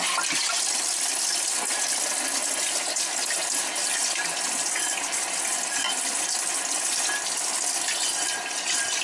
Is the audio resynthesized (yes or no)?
no